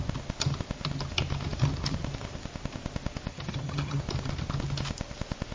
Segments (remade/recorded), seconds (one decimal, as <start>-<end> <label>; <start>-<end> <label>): 0.0-3.3 recorded; 3.3-4.0 remade; 4.0-5.5 recorded

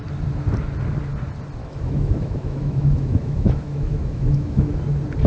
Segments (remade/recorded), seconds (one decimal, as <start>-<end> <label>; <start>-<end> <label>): 0.0-1.6 recorded; 1.6-4.8 remade; 4.8-5.3 recorded

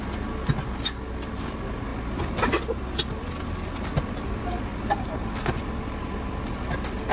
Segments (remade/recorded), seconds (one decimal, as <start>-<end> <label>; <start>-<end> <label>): 0.0-7.1 recorded